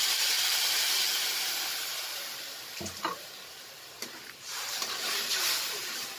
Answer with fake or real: fake